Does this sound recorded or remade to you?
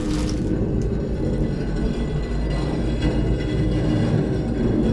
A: recorded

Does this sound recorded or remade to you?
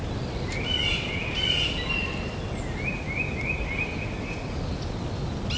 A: recorded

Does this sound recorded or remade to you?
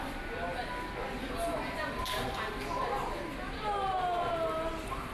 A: recorded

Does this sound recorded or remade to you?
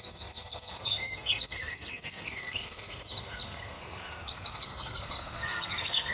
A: remade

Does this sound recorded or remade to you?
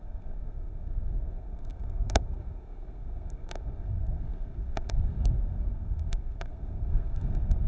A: remade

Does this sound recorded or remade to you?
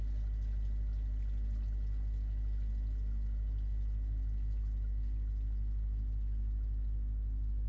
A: recorded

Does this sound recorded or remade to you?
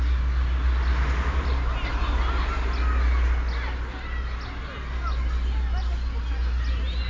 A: recorded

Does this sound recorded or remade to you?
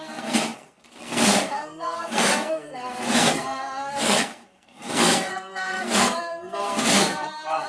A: remade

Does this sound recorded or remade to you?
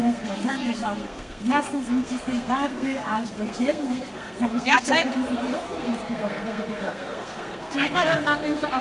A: remade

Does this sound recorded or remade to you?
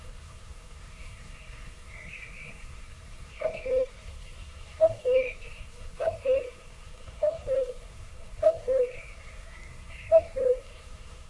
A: remade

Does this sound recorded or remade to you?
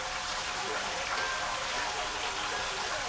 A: recorded